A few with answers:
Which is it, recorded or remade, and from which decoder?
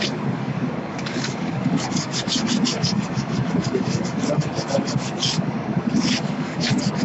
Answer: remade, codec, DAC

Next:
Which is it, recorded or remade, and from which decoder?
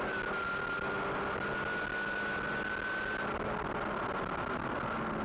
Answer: recorded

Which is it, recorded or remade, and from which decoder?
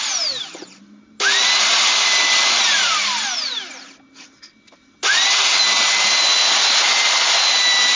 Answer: recorded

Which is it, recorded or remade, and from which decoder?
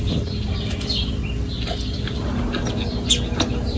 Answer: recorded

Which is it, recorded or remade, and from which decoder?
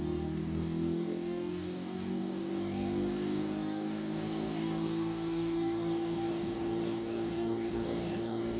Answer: remade, codec, DAC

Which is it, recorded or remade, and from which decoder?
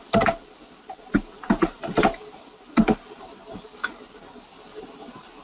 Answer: recorded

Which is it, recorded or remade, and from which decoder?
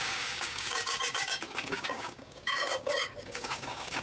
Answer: remade, codec, DAC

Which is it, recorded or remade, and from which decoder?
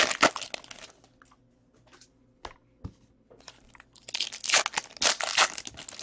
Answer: recorded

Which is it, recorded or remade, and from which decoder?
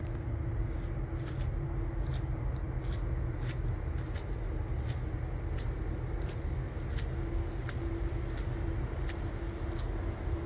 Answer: recorded